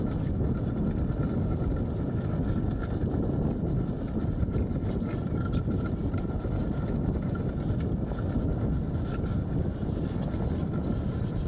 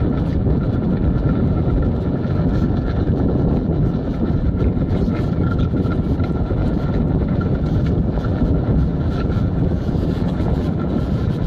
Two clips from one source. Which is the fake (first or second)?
second